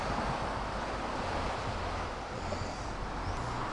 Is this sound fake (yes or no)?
no